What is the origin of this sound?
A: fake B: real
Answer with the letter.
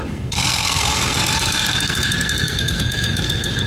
A